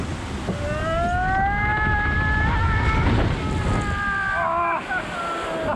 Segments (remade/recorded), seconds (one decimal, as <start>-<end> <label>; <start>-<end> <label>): 0.0-5.8 recorded

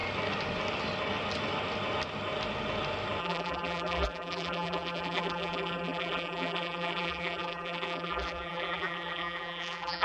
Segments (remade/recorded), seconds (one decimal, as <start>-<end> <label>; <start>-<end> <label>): 0.0-3.2 recorded; 3.2-10.0 remade